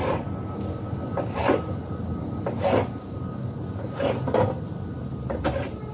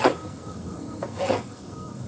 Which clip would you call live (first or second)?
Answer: first